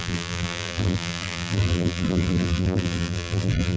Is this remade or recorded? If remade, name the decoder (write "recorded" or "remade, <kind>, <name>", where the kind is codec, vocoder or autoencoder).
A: remade, vocoder, BigVGAN v2